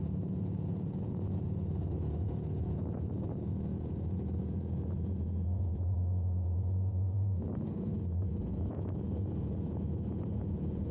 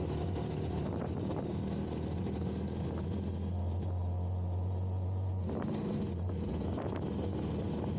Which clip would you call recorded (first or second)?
second